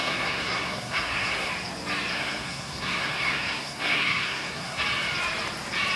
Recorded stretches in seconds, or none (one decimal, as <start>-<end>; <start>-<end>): 1.5-2.1; 4.8-6.0